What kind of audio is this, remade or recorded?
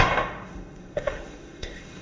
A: remade